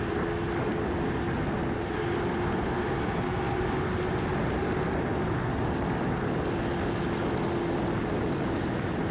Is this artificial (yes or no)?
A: no